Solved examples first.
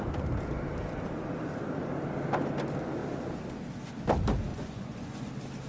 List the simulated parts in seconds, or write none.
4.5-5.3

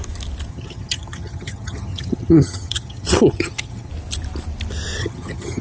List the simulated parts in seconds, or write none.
0.5-3.9; 5.0-5.6

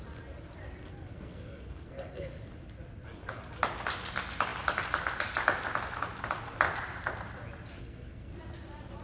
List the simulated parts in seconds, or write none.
0.9-2.5; 7.8-8.4

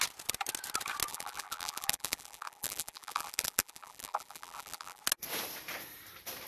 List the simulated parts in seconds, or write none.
1.1-5.0